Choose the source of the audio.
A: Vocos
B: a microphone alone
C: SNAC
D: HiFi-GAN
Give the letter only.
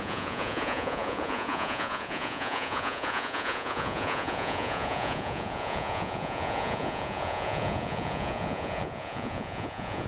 A